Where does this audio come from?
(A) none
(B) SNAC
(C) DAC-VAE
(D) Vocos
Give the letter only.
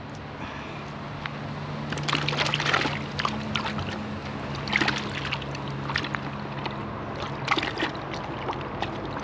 A